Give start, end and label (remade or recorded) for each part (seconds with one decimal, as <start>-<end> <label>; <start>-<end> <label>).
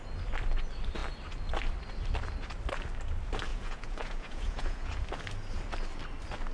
0.0-3.5 recorded; 3.5-5.0 remade; 5.0-6.5 recorded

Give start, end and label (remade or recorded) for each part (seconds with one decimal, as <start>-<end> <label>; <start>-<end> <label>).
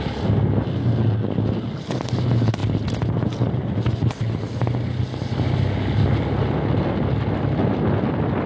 0.0-8.5 recorded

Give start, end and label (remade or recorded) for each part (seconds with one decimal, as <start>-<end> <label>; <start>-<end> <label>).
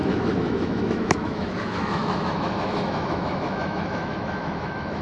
0.0-5.0 remade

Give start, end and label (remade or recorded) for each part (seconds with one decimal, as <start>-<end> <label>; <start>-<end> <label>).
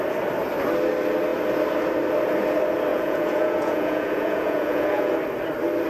0.0-2.9 recorded; 2.9-5.1 remade; 5.1-5.9 recorded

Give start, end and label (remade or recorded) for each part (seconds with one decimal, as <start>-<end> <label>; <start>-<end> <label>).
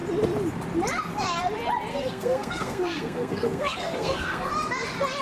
0.0-1.9 recorded; 1.9-4.5 remade; 4.5-5.2 recorded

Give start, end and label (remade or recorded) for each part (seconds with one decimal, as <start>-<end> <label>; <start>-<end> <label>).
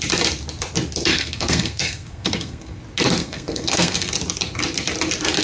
0.0-1.1 recorded; 1.1-2.8 remade; 2.8-3.2 recorded; 3.2-4.1 remade; 4.1-5.4 recorded